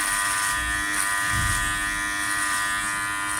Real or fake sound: real